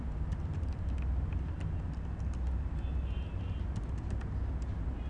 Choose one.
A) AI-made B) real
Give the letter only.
B